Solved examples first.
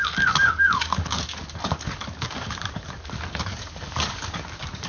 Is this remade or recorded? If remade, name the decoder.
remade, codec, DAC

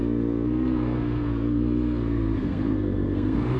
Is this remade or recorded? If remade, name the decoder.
remade, codec, SNAC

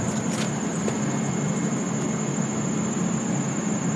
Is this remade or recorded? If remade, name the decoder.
recorded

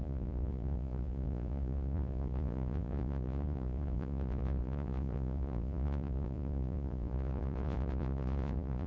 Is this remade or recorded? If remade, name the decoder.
remade, vocoder, Vocos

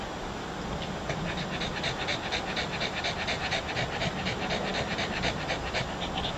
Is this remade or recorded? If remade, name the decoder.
recorded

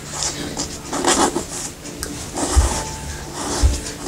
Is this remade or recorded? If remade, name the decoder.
recorded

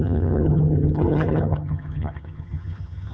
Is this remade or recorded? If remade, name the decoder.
remade, vocoder, HiFi-GAN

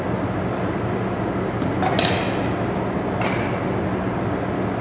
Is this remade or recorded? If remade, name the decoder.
recorded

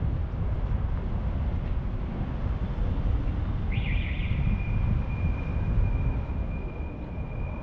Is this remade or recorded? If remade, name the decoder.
recorded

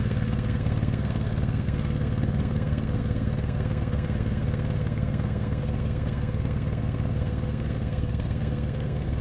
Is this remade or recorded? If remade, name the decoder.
remade, codec, SNAC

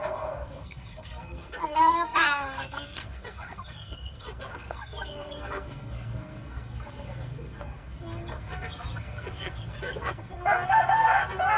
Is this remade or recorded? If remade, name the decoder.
remade, codec, SNAC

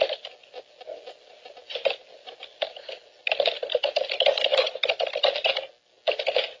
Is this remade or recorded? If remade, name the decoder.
recorded